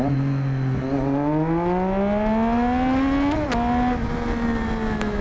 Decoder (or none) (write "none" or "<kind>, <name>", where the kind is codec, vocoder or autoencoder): none